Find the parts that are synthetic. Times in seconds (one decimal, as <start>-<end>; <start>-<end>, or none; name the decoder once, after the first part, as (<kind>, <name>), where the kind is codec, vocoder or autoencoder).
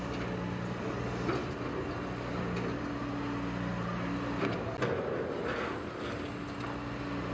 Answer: none